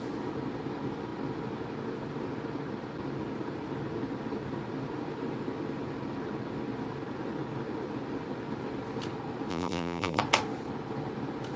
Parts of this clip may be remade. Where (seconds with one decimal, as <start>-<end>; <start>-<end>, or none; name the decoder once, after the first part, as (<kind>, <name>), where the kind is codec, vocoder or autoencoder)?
9.5-10.2 (vocoder, BigVGAN v2)